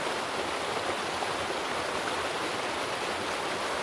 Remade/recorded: recorded